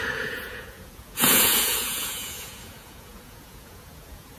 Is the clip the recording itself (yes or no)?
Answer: no